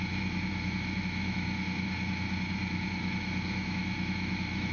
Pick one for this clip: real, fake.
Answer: fake